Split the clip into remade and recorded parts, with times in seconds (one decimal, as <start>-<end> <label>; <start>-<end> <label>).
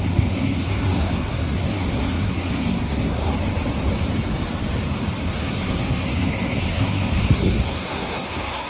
0.0-3.3 remade; 3.3-5.2 recorded; 5.2-8.7 remade